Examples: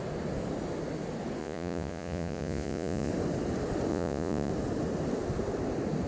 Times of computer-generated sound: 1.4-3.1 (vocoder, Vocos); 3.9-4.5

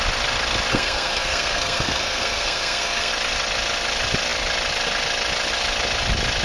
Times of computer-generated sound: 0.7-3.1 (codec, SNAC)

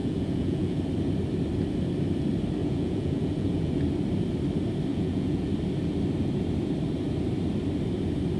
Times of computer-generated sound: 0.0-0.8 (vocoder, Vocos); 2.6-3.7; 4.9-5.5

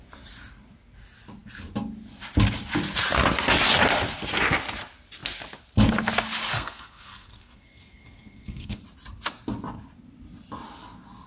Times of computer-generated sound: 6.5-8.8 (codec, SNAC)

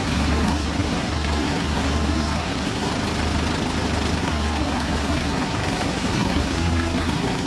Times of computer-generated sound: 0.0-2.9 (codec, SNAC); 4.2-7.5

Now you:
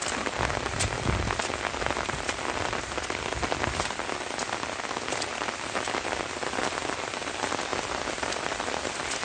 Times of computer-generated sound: none

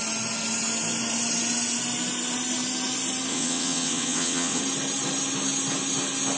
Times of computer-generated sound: 3.3-4.6 (vocoder, WaveNeXt)